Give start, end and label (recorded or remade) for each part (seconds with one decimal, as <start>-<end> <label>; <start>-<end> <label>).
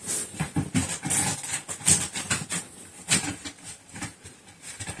0.0-5.0 recorded